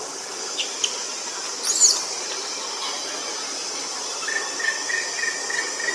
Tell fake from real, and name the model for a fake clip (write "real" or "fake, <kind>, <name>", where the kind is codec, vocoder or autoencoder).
real